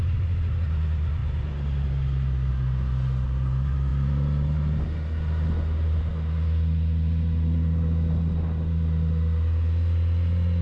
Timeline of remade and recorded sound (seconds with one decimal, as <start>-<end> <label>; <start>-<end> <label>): 0.0-10.6 recorded